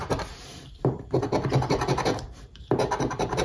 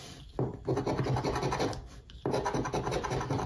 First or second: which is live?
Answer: second